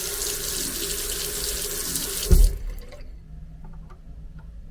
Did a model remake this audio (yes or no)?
no